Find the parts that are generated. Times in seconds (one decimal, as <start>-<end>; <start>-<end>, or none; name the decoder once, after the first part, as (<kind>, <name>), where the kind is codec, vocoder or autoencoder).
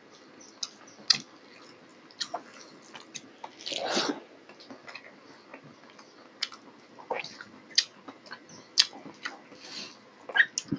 none